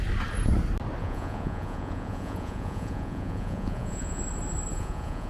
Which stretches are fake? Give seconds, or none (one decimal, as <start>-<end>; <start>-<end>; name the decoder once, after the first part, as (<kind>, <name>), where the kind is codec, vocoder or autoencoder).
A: 1.0-4.2 (vocoder, Vocos); 4.7-5.3